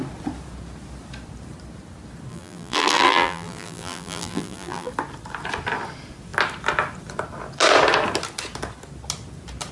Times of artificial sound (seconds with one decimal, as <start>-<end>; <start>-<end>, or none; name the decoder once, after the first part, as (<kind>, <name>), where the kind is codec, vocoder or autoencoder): 2.3-4.9 (vocoder, BigVGAN v2)